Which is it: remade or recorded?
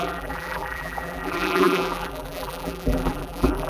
remade